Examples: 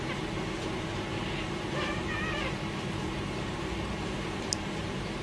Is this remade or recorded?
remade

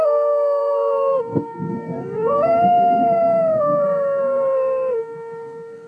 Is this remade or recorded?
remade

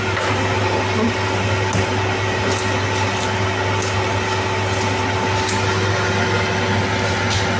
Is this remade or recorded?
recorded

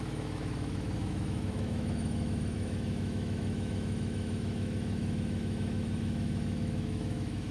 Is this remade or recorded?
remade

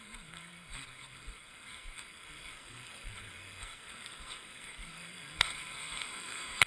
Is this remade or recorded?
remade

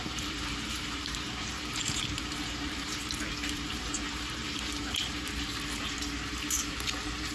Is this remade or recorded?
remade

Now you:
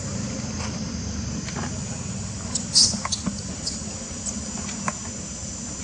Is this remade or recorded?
recorded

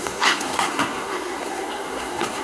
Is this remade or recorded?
remade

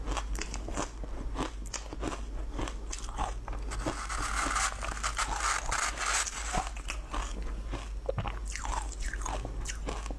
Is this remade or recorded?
recorded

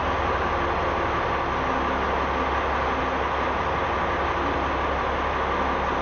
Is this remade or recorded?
recorded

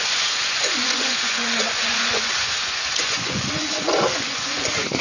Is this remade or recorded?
remade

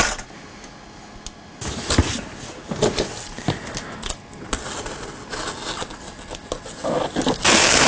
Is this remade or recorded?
recorded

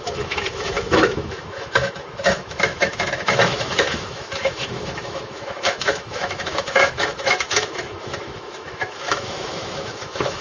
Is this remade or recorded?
remade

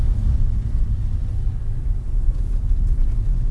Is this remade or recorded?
recorded